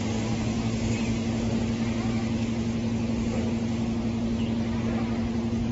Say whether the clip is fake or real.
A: real